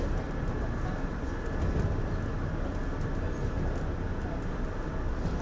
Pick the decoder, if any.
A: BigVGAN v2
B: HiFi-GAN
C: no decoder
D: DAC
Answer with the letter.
C